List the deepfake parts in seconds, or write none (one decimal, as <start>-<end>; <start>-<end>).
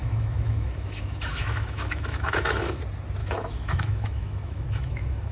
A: 0.0-2.8; 3.2-5.3